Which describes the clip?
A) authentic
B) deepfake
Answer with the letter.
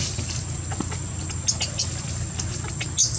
A